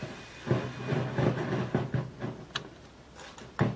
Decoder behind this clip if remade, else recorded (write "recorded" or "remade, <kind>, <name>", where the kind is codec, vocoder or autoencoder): recorded